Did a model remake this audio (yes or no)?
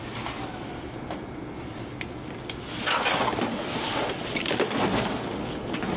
no